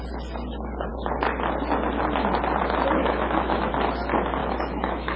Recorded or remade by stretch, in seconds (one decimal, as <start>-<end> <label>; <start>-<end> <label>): 0.0-3.0 recorded; 3.0-3.7 remade; 3.7-4.4 recorded; 4.4-5.2 remade